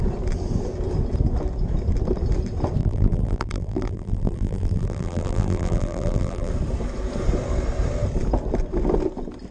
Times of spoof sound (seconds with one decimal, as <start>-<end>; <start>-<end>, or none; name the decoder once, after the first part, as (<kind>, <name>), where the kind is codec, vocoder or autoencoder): 2.8-6.5 (vocoder, BigVGAN v2)